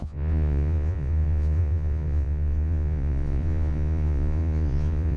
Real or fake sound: fake